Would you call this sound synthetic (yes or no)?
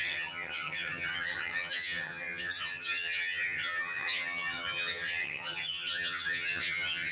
yes